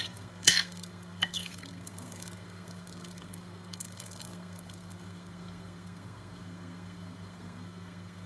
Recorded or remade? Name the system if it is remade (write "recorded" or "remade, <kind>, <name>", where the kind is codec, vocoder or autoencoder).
remade, codec, SNAC